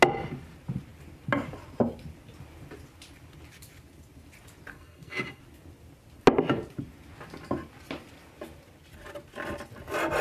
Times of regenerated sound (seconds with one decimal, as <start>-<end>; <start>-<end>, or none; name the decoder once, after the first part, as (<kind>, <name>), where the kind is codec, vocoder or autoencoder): 4.7-5.4 (codec, SNAC)